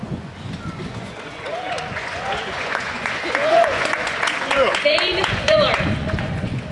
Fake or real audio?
fake